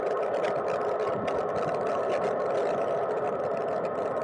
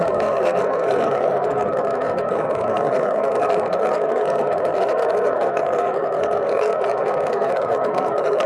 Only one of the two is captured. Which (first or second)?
first